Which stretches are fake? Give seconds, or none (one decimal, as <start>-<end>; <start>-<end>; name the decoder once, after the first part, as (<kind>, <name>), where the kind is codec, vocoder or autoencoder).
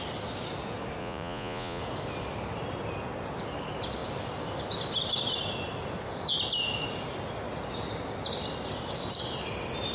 1.0-1.8 (vocoder, Vocos)